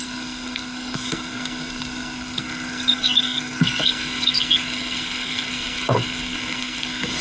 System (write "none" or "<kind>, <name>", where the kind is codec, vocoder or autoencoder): codec, SNAC